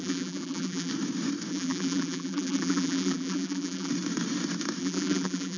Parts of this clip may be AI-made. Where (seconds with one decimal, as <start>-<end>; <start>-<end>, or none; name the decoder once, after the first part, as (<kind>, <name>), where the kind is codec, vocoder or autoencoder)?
0.0-0.9 (vocoder, BigVGAN v2); 1.5-3.9; 4.8-5.6